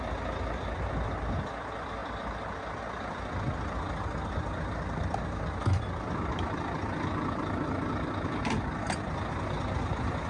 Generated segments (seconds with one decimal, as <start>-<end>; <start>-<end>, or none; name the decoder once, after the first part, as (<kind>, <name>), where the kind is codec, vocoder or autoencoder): none